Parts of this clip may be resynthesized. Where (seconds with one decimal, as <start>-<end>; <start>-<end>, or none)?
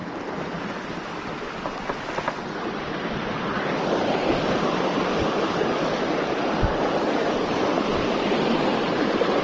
none